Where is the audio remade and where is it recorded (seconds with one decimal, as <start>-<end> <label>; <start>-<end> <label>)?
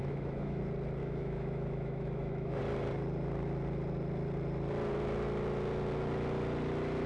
0.0-0.6 remade; 0.6-1.0 recorded; 1.0-2.6 remade; 2.6-7.1 recorded